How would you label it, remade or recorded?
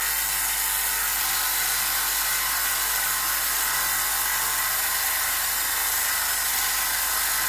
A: recorded